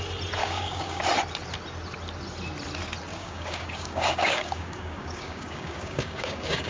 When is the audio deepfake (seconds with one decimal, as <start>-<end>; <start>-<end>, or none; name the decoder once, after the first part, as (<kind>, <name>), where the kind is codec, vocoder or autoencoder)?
0.4-1.0 (codec, DAC); 3.1-6.7